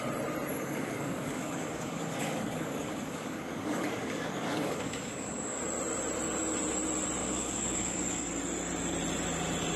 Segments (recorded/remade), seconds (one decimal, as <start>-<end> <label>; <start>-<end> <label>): 0.0-0.5 recorded; 0.5-5.6 remade; 5.6-7.2 recorded; 7.2-8.3 remade; 8.3-9.8 recorded